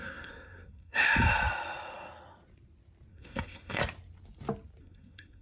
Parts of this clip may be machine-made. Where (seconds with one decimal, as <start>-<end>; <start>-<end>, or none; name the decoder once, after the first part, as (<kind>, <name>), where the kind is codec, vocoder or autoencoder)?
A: 0.0-1.1 (codec, SNAC); 3.1-3.8; 4.8-5.4